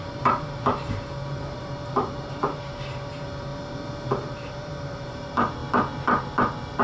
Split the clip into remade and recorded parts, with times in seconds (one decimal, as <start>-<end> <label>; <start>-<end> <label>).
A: 0.0-3.5 remade; 3.5-4.1 recorded; 4.1-5.6 remade; 5.6-6.8 recorded